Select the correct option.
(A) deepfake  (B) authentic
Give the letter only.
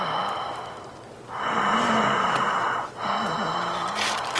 B